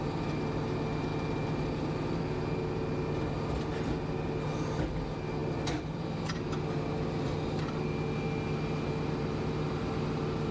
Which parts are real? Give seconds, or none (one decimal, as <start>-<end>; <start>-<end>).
0.0-10.5